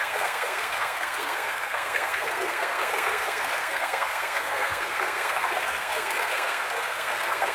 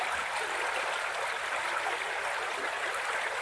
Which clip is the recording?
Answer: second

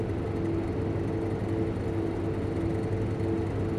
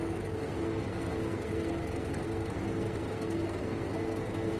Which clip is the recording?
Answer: first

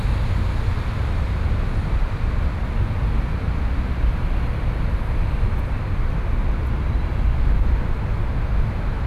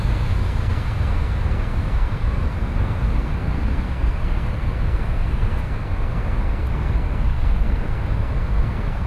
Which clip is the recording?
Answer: first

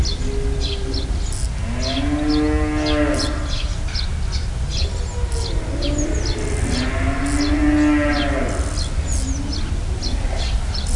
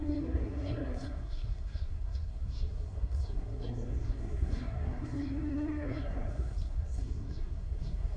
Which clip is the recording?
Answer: first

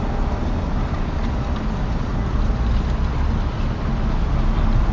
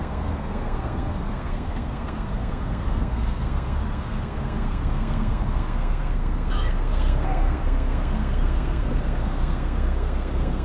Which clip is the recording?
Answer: first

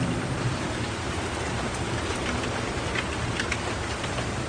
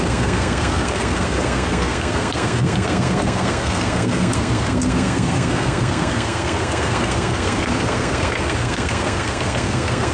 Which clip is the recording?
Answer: first